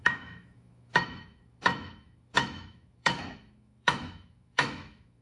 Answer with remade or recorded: remade